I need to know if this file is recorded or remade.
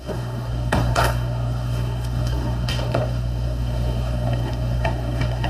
remade